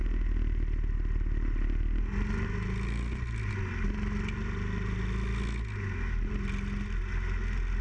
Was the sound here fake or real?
real